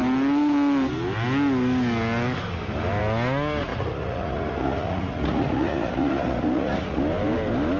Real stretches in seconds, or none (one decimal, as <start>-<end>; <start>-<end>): 0.0-3.7; 7.0-7.8